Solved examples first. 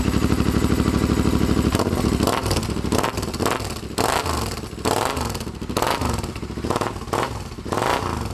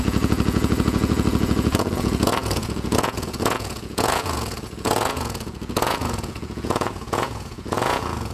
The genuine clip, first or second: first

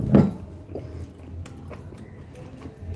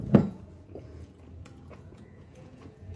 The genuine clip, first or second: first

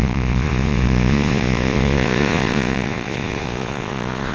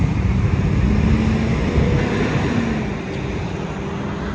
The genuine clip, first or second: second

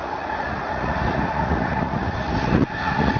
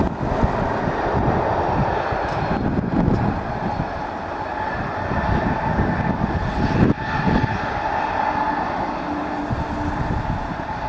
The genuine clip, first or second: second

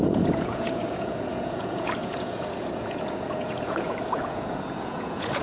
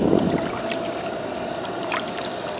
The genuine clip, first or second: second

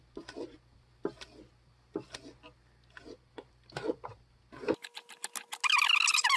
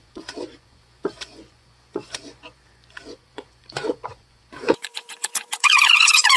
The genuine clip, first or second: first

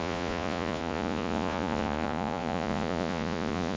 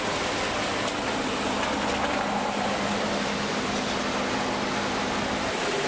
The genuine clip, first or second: second